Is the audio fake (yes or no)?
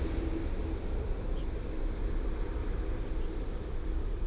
no